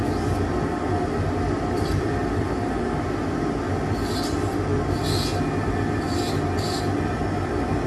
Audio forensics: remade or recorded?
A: recorded